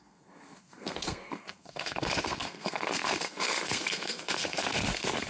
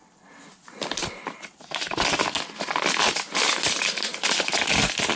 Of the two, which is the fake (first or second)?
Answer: first